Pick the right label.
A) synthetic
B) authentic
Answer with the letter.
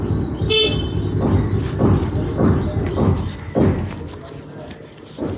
B